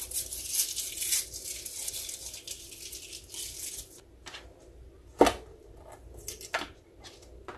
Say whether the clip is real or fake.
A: real